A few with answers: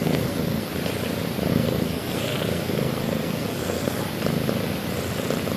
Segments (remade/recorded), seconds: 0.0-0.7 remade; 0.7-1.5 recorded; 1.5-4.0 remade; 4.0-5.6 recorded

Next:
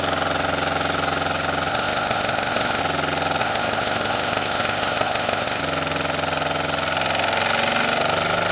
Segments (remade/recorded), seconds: 0.0-1.7 recorded; 1.7-2.8 remade; 2.8-3.4 recorded; 3.4-5.6 remade; 5.6-8.5 recorded